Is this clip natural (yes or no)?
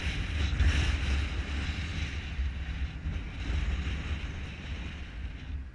yes